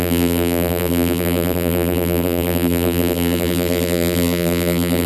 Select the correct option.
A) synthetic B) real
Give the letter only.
A